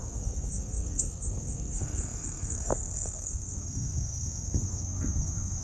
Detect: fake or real fake